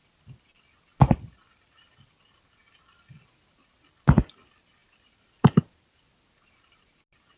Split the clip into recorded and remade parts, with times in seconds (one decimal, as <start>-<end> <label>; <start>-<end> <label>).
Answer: 0.0-7.4 recorded